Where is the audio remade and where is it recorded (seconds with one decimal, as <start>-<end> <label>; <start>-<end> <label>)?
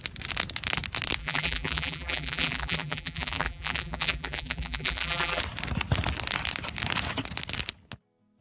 0.0-1.2 recorded; 1.2-5.4 remade; 5.4-8.4 recorded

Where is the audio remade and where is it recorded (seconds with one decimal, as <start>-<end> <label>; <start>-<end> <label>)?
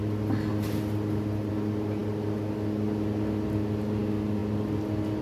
0.0-5.2 recorded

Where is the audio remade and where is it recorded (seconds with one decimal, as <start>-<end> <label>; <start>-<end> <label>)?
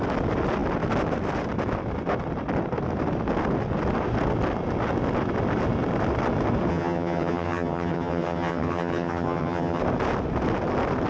0.0-6.7 recorded; 6.7-9.8 remade; 9.8-11.1 recorded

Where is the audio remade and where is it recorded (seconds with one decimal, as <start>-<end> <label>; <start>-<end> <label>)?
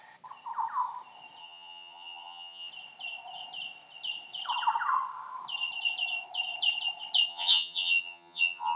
0.0-1.4 recorded; 1.4-2.7 remade; 2.7-7.3 recorded; 7.3-8.8 remade